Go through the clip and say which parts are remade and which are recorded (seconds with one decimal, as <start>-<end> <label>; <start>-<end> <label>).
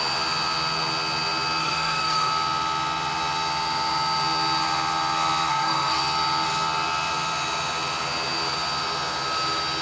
0.0-1.6 recorded; 1.6-2.3 remade; 2.3-5.5 recorded; 5.5-6.0 remade; 6.0-9.8 recorded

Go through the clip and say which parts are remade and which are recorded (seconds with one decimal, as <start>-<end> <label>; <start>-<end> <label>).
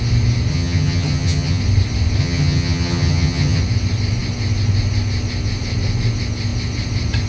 0.0-0.5 recorded; 0.5-1.6 remade; 1.6-2.2 recorded; 2.2-3.6 remade; 3.6-7.3 recorded